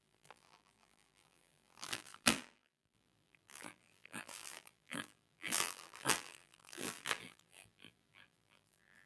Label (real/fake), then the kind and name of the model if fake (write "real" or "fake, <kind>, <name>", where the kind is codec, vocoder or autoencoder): fake, vocoder, BigVGAN v2